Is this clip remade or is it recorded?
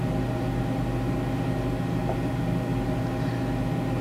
recorded